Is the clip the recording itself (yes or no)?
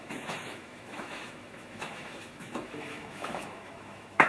no